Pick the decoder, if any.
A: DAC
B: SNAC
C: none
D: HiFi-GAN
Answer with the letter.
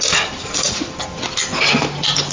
C